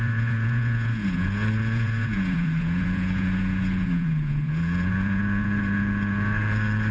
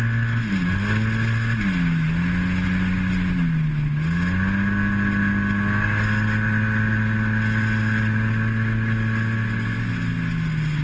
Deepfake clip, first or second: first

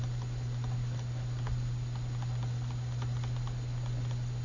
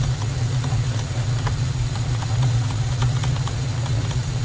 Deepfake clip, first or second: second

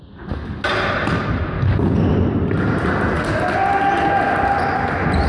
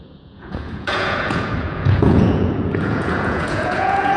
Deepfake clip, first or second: second